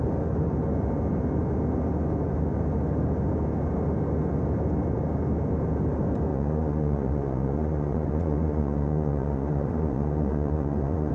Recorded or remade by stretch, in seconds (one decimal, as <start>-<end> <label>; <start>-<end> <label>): 0.0-6.3 recorded; 6.3-11.1 remade